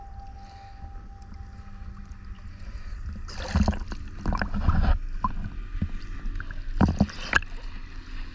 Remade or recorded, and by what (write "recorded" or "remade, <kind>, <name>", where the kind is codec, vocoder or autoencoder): recorded